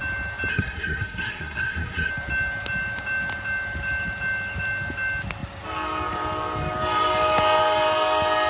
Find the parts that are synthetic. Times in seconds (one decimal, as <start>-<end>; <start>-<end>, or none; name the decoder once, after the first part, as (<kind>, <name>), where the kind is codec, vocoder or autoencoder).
0.5-2.1 (codec, SNAC)